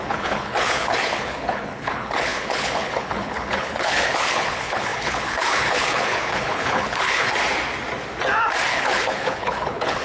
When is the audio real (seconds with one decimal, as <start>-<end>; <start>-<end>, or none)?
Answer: 7.3-8.7